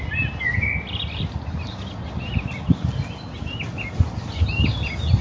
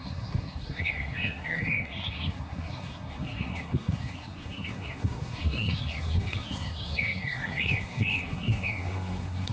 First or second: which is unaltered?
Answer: first